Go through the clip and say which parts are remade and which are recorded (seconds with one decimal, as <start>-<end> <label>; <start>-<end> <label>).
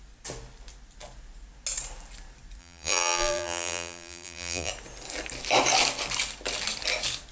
0.0-2.6 recorded; 2.6-4.7 remade; 4.7-7.3 recorded